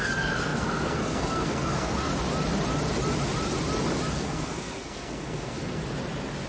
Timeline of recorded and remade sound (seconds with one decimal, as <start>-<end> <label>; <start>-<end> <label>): 0.0-2.1 remade; 2.1-4.1 recorded; 4.1-5.8 remade; 5.8-6.5 recorded